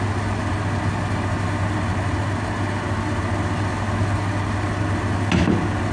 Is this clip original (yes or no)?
yes